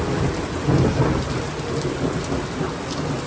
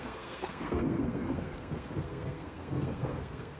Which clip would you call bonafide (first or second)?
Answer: first